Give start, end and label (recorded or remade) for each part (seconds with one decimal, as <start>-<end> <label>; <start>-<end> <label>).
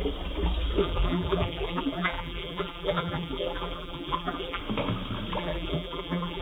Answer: 0.0-0.8 recorded; 0.8-4.6 remade; 4.6-5.4 recorded; 5.4-6.4 remade